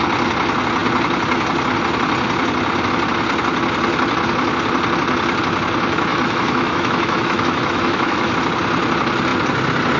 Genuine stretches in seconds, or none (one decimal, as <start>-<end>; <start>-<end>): 0.0-6.1; 8.3-10.0